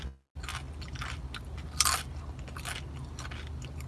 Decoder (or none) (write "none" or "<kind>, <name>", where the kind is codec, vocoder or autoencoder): none